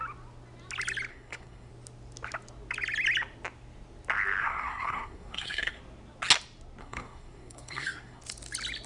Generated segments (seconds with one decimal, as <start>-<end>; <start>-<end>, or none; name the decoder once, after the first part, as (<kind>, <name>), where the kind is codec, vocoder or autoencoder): 1.1-1.7 (codec, SNAC); 4.4-5.8; 6.8-8.2